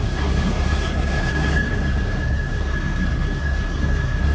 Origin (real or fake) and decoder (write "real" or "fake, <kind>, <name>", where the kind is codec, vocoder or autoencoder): fake, codec, SNAC